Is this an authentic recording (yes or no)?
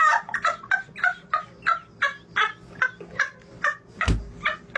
yes